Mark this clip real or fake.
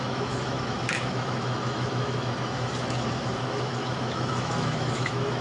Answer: fake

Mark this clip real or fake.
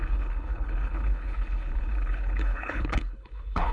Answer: fake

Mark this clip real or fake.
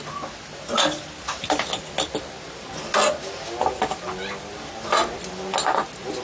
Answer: real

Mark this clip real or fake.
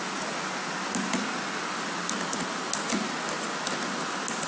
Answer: real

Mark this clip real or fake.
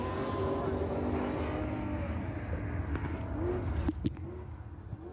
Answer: real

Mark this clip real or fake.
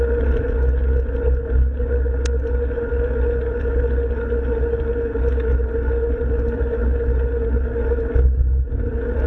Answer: real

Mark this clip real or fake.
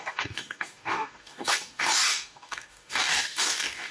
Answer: fake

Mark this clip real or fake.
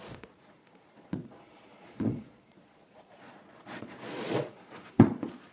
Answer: fake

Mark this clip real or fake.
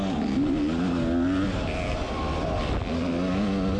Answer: real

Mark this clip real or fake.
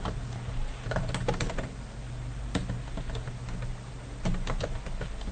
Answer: real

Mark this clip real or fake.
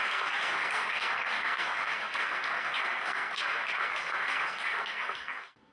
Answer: fake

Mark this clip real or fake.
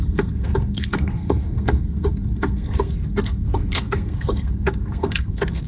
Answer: fake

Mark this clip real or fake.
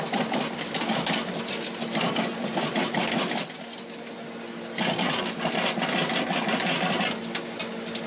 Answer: real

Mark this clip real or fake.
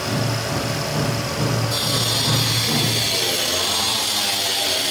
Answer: real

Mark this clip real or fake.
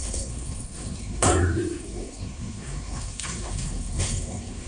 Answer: fake